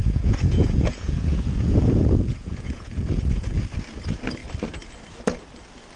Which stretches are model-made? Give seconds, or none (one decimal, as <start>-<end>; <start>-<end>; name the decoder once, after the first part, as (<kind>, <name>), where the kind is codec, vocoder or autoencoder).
0.0-3.6 (vocoder, Vocos)